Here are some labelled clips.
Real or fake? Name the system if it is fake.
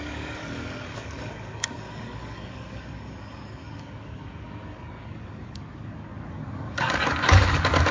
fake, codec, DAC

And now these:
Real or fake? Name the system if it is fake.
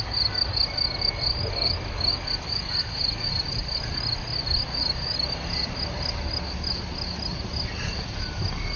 real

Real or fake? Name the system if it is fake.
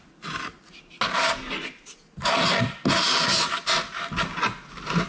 real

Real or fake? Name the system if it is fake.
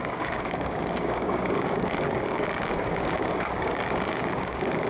fake, codec, DAC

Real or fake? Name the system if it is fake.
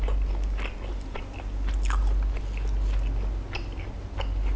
real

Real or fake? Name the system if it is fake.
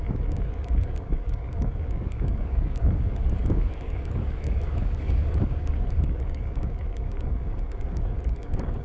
fake, codec, DAC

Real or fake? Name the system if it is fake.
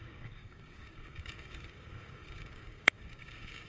fake, codec, DAC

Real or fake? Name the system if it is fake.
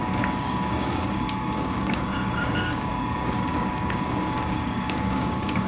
fake, codec, DAC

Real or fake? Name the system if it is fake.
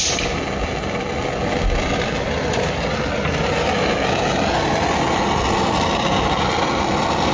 real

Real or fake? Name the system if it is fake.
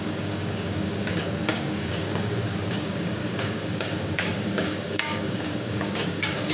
fake, codec, DAC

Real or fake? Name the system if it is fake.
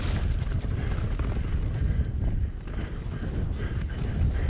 real